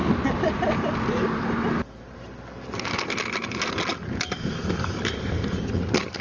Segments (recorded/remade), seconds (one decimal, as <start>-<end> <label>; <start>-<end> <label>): 0.0-6.2 recorded